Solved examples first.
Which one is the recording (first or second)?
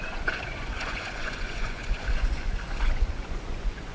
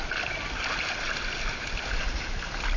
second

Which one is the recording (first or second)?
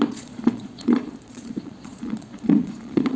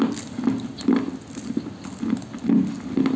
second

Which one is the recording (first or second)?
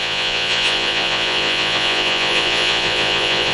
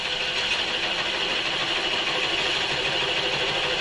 second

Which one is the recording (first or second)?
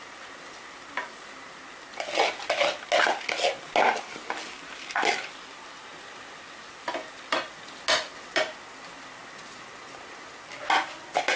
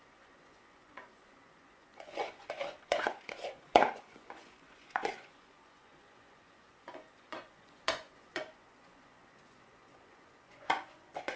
first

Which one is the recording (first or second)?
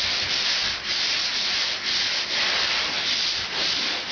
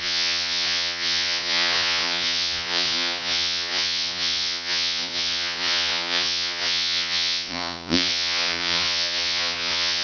first